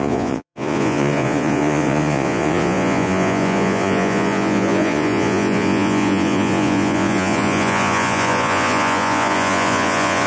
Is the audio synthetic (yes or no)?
yes